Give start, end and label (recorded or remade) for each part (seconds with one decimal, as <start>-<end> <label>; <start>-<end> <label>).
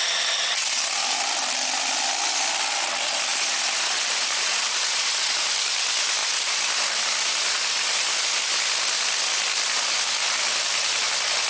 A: 0.0-3.3 recorded; 3.3-5.5 remade; 5.5-6.2 recorded; 6.2-8.4 remade; 8.4-11.5 recorded